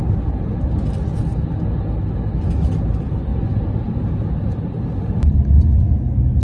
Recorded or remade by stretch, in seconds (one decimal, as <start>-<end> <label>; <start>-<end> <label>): 0.0-3.3 recorded; 3.3-5.6 remade; 5.6-6.4 recorded